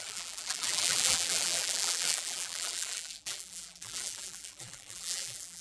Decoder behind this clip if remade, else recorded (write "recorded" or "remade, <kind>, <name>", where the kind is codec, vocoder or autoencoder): remade, vocoder, BigVGAN v2